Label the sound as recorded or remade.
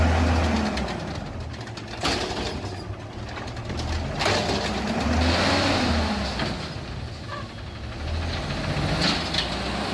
recorded